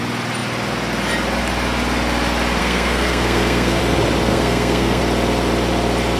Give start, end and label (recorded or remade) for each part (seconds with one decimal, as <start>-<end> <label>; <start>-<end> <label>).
0.0-2.6 recorded; 2.6-3.8 remade; 3.8-4.3 recorded; 4.3-5.0 remade; 5.0-6.2 recorded